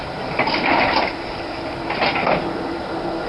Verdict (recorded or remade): remade